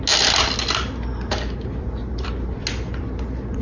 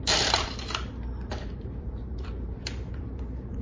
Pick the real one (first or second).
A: first